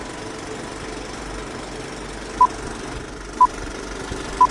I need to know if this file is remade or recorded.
recorded